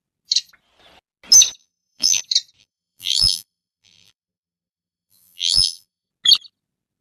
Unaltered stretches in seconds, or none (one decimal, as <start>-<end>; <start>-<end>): 0.0-1.6; 2.2-2.6; 6.1-7.0